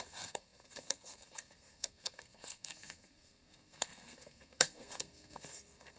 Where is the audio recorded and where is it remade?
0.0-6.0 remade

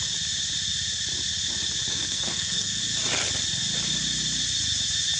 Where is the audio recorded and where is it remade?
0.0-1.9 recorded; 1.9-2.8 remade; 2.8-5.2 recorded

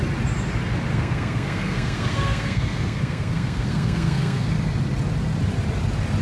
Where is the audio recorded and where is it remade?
0.0-0.9 recorded; 0.9-4.5 remade; 4.5-6.2 recorded

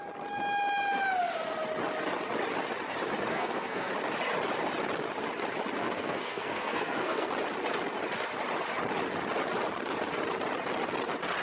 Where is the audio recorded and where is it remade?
0.0-3.3 recorded; 3.3-3.9 remade; 3.9-5.8 recorded; 5.8-7.3 remade; 7.3-11.4 recorded

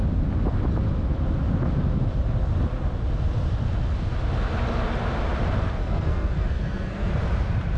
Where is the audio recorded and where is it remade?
0.0-5.8 recorded; 5.8-7.1 remade; 7.1-7.8 recorded

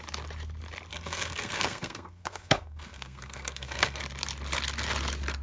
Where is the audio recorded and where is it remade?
0.0-0.9 recorded; 0.9-4.0 remade; 4.0-5.4 recorded

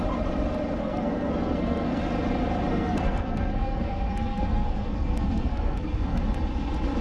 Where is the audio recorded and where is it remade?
0.0-0.8 recorded; 0.8-2.0 remade; 2.0-2.7 recorded; 2.7-6.2 remade; 6.2-7.0 recorded

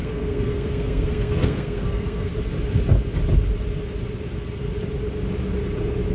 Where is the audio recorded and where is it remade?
0.0-2.3 remade; 2.3-6.1 recorded